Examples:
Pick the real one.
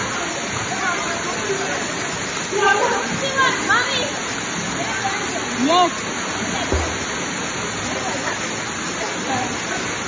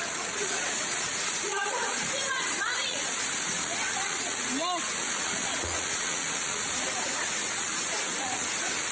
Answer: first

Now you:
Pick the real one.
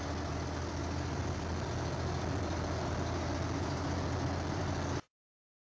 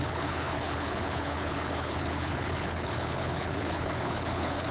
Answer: first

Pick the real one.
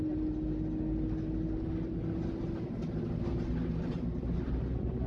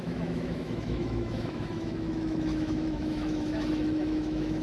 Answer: first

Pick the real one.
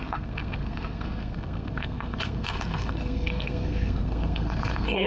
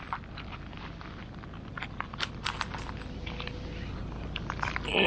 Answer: second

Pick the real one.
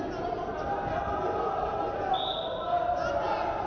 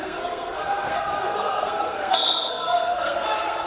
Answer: first